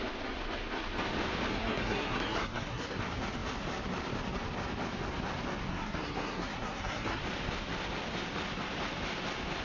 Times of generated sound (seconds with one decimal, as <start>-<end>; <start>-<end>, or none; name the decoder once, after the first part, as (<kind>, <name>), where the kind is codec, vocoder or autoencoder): 1.5-3.0 (codec, SNAC); 5.7-7.2